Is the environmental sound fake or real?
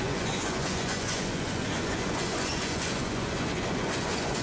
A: fake